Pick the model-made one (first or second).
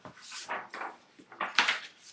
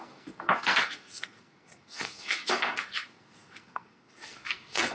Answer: second